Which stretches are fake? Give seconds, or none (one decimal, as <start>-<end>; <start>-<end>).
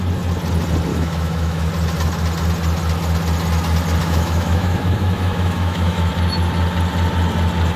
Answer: 0.9-1.7; 4.0-6.1